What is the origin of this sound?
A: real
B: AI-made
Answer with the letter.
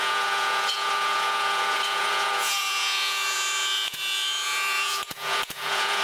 B